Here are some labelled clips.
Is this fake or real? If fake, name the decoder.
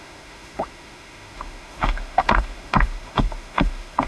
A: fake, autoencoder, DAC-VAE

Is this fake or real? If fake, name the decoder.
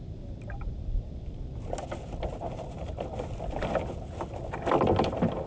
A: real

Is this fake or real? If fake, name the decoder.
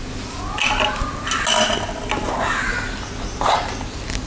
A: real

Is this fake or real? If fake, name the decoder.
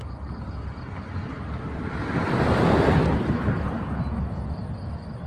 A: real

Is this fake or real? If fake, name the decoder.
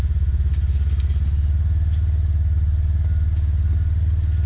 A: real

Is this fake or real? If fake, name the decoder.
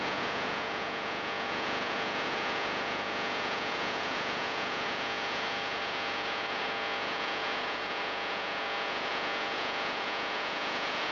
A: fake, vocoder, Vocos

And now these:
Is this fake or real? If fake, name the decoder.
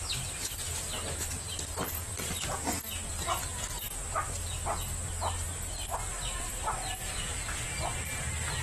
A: real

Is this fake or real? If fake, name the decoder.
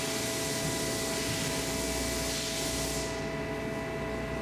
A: real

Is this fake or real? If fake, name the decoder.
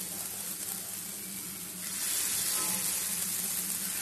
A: real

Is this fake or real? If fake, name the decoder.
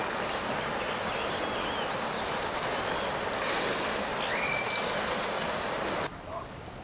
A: real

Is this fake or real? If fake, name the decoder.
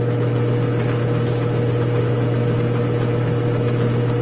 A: real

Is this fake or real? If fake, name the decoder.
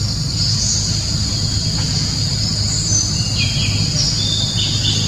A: real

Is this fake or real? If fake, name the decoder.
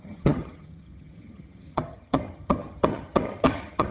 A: fake, vocoder, HiFi-GAN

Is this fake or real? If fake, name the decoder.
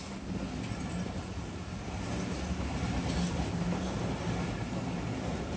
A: real